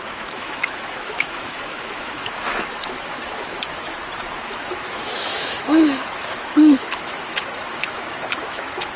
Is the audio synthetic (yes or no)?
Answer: yes